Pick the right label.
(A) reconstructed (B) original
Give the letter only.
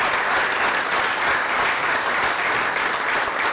B